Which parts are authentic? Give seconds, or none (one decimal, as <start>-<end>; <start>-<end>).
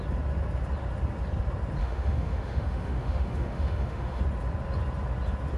0.0-1.8; 4.2-5.6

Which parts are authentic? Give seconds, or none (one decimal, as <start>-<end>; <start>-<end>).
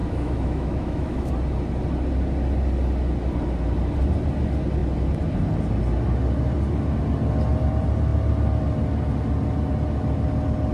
1.3-10.7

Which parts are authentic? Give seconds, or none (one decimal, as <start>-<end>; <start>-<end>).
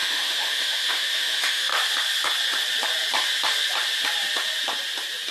1.7-5.3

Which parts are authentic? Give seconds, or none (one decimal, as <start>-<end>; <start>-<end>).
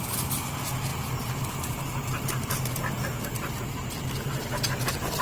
0.0-5.2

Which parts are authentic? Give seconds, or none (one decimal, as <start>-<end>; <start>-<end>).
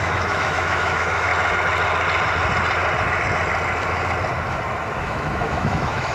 1.3-5.0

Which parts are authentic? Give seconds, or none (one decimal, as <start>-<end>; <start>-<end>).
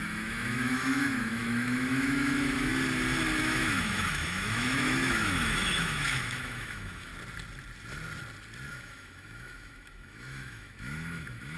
2.7-3.4; 7.1-8.7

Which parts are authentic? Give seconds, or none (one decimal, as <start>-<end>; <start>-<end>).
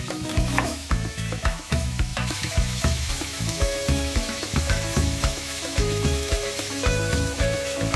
none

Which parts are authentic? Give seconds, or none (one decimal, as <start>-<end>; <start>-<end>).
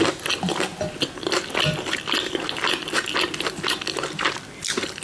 0.0-5.0